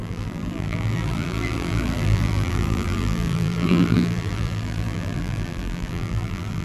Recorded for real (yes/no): no